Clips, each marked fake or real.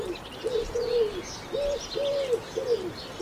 real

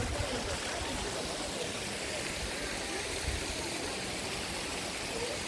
real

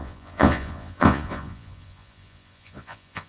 fake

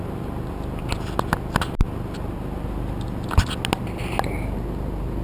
real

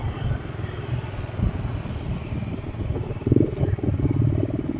real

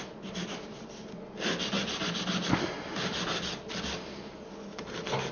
real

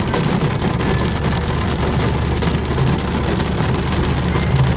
real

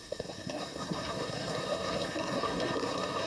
fake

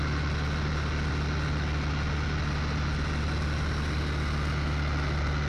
real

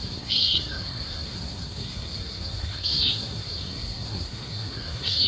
fake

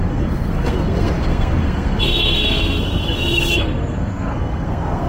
fake